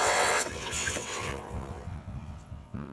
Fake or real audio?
fake